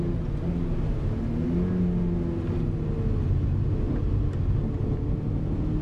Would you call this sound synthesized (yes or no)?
no